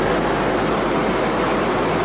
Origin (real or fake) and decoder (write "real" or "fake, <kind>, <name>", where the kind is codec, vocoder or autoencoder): real